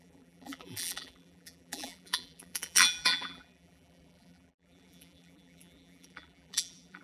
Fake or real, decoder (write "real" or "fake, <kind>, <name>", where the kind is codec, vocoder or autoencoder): fake, vocoder, BigVGAN v2